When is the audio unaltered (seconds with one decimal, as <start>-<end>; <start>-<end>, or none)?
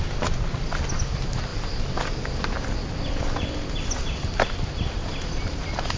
0.0-6.0